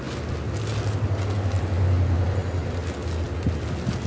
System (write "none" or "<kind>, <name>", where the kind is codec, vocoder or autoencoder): none